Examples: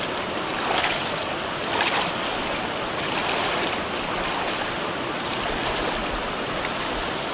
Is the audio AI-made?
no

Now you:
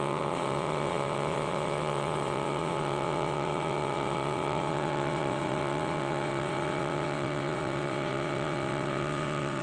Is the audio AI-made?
yes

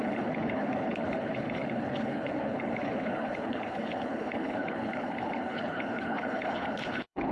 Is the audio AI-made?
yes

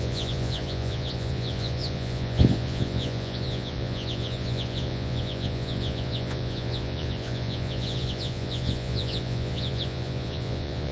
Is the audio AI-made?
yes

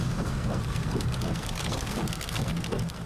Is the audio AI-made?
yes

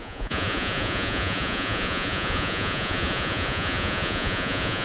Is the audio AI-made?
yes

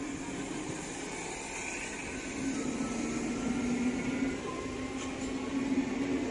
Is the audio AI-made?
no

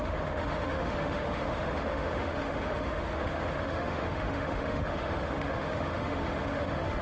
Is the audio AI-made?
yes